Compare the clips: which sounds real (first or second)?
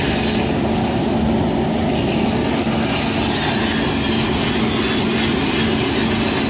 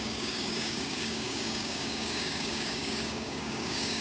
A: first